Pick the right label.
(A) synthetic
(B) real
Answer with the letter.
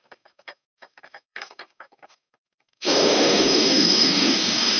A